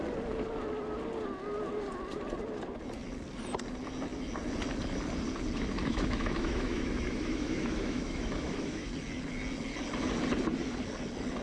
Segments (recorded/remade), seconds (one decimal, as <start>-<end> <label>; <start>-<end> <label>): 0.0-5.8 recorded; 5.8-8.9 remade; 8.9-11.4 recorded